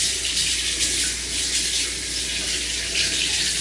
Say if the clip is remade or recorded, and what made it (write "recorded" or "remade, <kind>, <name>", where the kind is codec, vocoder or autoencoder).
recorded